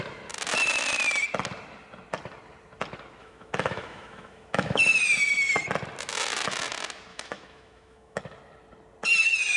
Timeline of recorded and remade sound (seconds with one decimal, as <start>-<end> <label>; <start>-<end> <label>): 0.0-3.2 recorded; 3.2-4.8 remade; 4.8-7.1 recorded; 7.1-8.2 remade; 8.2-9.6 recorded